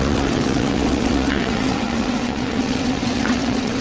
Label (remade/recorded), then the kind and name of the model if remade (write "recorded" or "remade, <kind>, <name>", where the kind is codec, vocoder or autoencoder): remade, vocoder, WaveNeXt